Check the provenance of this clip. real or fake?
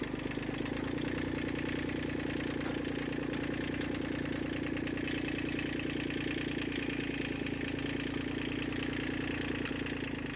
real